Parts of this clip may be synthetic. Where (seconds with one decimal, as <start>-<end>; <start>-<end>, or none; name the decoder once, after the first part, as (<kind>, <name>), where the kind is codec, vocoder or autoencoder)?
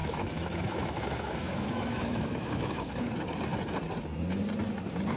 0.0-3.1 (autoencoder, DAC-VAE)